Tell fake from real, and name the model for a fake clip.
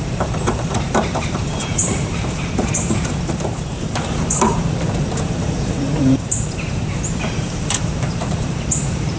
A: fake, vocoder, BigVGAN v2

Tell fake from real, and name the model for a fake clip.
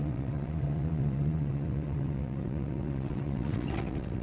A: fake, vocoder, WaveNeXt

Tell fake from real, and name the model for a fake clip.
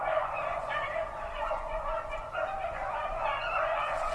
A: fake, vocoder, Vocos